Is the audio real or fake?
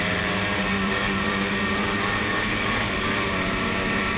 fake